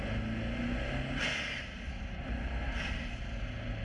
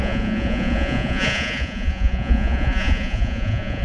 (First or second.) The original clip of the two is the first